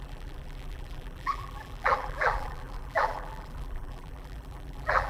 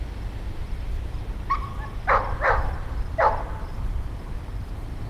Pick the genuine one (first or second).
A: second